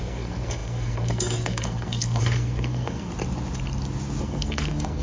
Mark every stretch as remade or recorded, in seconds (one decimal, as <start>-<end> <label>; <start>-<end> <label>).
0.0-3.1 remade; 3.1-4.2 recorded; 4.2-5.0 remade